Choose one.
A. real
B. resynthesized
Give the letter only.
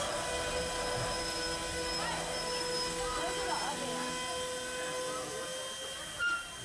A